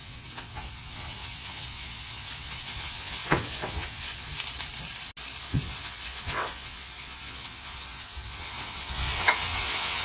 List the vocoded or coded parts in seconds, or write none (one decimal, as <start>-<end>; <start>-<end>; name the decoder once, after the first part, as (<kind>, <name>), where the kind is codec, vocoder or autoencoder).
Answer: 0.0-4.3 (vocoder, WaveNeXt); 5.4-10.0